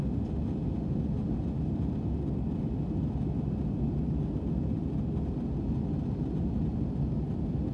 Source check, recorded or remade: recorded